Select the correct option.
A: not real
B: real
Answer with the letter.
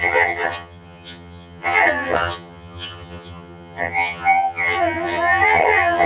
A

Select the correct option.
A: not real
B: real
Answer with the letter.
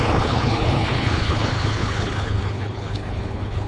A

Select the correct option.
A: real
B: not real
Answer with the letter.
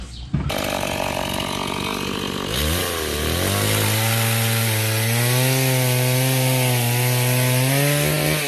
A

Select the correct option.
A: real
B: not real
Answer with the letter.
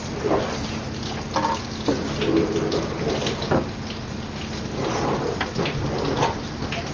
A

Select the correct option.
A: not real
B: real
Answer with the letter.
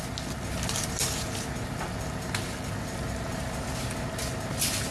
B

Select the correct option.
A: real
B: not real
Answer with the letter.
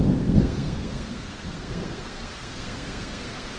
B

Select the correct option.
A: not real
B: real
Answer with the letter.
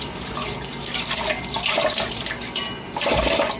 B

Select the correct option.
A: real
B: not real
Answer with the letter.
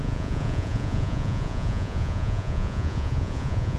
B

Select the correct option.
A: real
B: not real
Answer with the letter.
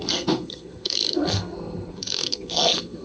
B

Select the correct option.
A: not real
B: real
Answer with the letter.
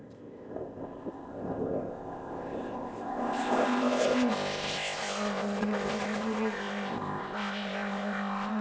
A